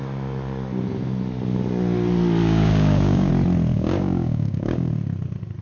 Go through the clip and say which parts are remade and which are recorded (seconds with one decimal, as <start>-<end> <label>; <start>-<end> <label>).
0.0-2.4 recorded; 2.4-3.3 remade; 3.3-3.7 recorded; 3.7-4.9 remade; 4.9-5.6 recorded